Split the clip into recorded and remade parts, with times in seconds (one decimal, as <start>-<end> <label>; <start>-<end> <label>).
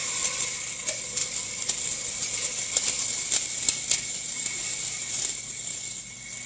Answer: 0.0-0.7 remade; 0.7-1.2 recorded; 1.2-3.0 remade; 3.0-6.5 recorded